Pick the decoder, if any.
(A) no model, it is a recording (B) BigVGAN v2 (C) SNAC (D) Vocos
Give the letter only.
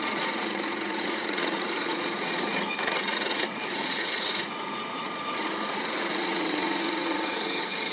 D